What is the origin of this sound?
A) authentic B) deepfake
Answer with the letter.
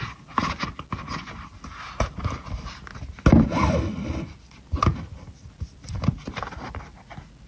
A